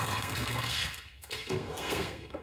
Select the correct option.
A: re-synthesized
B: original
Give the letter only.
A